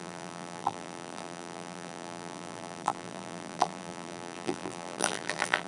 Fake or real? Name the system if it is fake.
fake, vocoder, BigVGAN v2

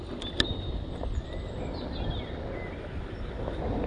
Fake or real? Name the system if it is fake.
real